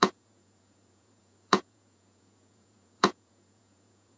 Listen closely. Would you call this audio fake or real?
fake